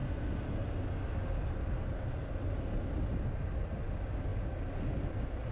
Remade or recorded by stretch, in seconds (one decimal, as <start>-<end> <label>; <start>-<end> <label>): 0.0-5.5 recorded